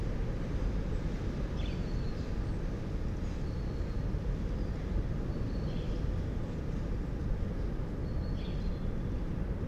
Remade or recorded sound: recorded